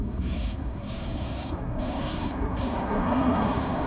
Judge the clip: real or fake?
fake